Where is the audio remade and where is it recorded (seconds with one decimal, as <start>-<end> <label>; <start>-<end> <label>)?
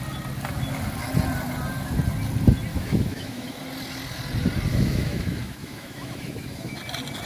0.0-2.7 recorded; 2.7-3.6 remade; 3.6-4.7 recorded; 4.7-6.8 remade; 6.8-7.3 recorded